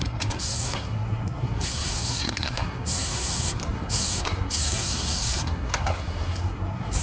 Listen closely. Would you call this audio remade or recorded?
remade